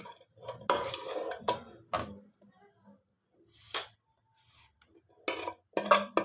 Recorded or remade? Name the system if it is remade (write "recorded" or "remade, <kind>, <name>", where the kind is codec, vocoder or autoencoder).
recorded